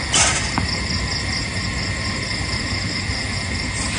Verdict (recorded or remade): recorded